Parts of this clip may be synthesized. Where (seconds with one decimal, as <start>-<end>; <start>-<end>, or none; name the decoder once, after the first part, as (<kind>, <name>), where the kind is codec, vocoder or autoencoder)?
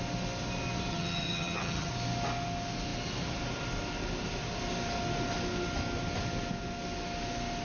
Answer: 0.9-1.9 (vocoder, HiFi-GAN)